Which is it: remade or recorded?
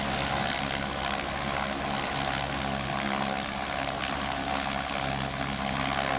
recorded